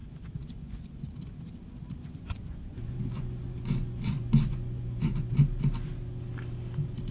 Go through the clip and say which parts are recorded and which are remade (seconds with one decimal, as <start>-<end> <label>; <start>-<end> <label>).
0.0-1.1 remade; 1.1-2.0 recorded; 2.0-5.4 remade; 5.4-7.1 recorded